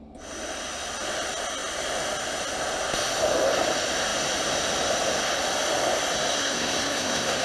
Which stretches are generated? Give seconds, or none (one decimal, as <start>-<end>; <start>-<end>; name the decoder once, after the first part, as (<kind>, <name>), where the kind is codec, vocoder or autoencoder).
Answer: 6.3-7.4 (codec, SNAC)